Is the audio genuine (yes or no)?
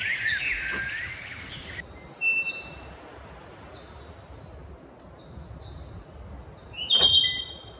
yes